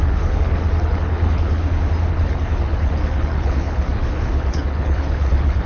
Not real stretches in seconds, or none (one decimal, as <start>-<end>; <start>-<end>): 0.0-1.6; 2.1-5.7